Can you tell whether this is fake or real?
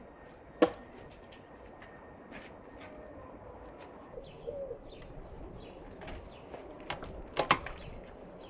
real